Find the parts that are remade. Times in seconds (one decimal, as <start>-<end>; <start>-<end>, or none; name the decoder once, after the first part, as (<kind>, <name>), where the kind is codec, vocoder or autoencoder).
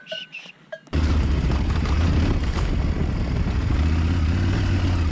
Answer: 3.0-3.7 (vocoder, BigVGAN v2)